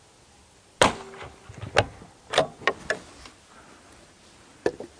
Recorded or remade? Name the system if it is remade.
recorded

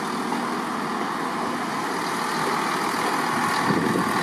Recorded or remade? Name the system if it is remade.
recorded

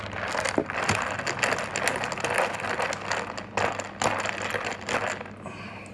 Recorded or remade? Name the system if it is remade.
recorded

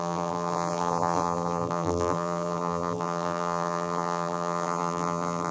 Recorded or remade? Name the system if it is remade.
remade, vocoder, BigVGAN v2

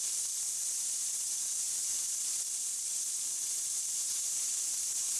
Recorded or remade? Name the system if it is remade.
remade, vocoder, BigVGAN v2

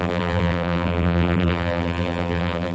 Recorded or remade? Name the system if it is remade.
remade, vocoder, BigVGAN v2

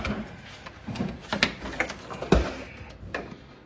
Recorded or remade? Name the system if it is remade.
recorded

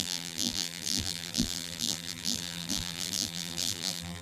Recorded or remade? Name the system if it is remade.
remade, vocoder, BigVGAN v2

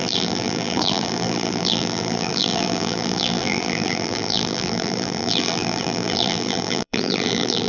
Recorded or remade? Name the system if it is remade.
remade, vocoder, BigVGAN v2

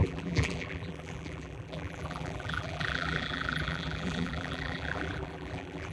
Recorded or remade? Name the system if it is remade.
remade, vocoder, BigVGAN v2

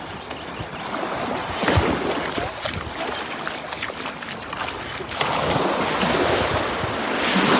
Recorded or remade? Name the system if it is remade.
recorded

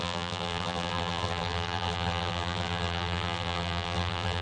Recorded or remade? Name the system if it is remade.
remade, vocoder, BigVGAN v2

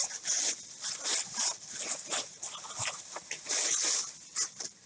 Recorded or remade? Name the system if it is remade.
remade, vocoder, BigVGAN v2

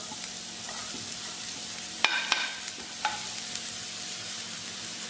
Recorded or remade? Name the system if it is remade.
remade, vocoder, BigVGAN v2